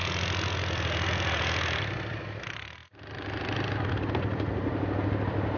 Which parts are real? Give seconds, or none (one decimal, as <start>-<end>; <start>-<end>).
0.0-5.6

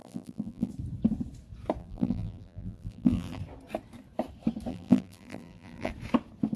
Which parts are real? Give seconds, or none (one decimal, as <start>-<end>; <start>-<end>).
0.7-1.8; 3.4-4.7; 5.9-6.6

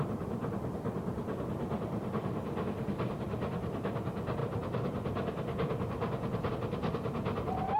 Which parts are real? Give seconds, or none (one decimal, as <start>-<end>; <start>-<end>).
none

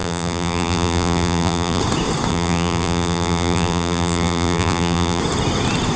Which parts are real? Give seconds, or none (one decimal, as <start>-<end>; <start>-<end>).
1.8-2.3; 5.2-6.0

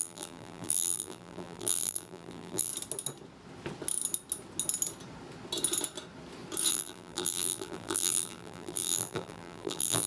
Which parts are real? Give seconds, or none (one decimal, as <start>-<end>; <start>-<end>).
2.7-6.7